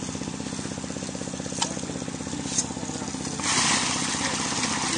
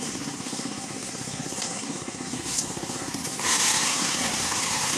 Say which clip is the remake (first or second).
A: second